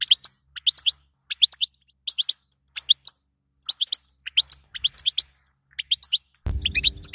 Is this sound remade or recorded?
recorded